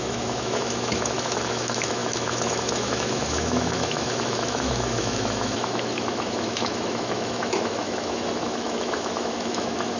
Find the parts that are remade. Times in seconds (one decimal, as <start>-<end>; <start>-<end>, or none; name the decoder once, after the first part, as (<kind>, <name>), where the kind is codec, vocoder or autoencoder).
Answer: 0.0-10.0 (autoencoder, DAC-VAE)